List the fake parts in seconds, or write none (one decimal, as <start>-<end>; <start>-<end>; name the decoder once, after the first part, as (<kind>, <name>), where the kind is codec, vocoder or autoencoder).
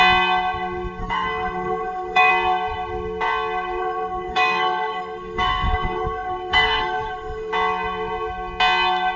1.0-2.3 (codec, SNAC); 3.8-7.5